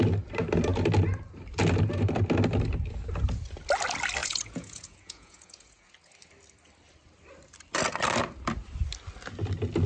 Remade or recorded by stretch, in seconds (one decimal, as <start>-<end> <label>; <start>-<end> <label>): 0.0-4.2 recorded; 4.2-5.9 remade; 5.9-9.9 recorded